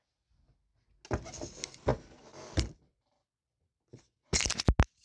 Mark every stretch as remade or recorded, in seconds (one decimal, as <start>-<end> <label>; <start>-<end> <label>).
0.0-5.0 recorded